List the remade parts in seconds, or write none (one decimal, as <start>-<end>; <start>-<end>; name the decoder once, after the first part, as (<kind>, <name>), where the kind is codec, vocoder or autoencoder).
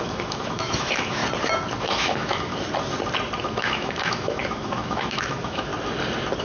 0.0-1.2 (autoencoder, DAC-VAE); 1.8-2.5; 3.4-5.7